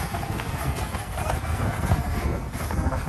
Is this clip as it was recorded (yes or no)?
no